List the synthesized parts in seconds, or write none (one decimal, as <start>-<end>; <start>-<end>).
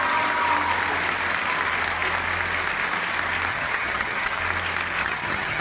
3.5-4.4; 5.0-5.6